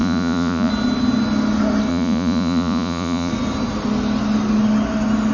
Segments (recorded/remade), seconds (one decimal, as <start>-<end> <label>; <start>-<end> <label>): 0.0-0.7 remade; 0.7-1.9 recorded; 1.9-3.3 remade; 3.3-5.3 recorded